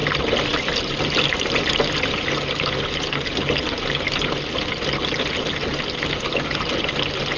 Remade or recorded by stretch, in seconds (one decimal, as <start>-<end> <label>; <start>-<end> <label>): 0.0-1.9 remade; 1.9-7.4 recorded